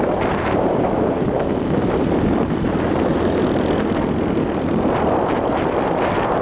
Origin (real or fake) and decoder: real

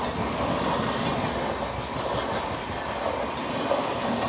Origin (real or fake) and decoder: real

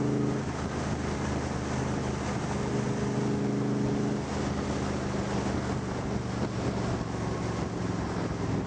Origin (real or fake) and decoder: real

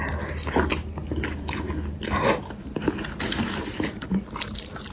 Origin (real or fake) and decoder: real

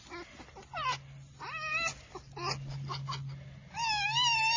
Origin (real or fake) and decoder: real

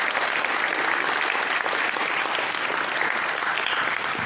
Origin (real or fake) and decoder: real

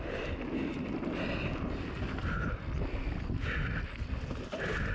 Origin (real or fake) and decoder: real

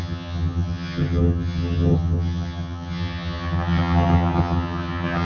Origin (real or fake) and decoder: fake, vocoder, HiFi-GAN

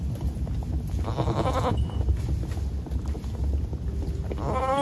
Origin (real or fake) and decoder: real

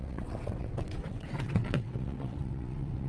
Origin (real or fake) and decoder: fake, vocoder, WaveNeXt